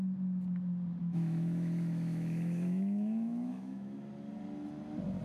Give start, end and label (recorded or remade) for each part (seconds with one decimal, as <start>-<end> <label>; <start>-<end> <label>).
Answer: 0.0-1.0 recorded; 1.0-4.1 remade; 4.1-5.2 recorded